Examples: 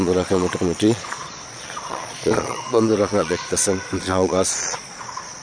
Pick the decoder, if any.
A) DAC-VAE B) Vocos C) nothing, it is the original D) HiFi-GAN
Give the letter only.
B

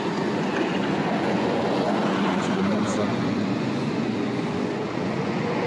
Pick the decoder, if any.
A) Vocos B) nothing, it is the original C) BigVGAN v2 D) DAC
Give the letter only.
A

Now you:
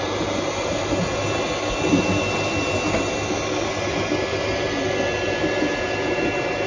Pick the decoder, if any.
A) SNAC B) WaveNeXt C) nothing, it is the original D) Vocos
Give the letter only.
C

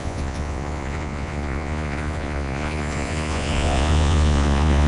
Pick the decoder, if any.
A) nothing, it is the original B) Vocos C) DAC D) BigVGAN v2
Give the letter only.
B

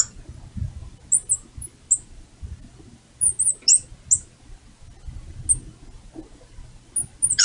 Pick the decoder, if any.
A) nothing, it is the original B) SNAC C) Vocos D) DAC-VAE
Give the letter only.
A